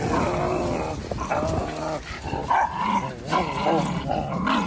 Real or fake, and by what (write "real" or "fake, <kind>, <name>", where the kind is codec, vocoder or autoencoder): real